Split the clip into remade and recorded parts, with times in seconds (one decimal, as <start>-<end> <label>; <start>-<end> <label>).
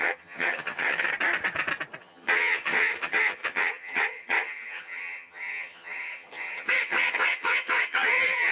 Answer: 0.0-1.1 remade; 1.1-2.0 recorded; 2.0-8.5 remade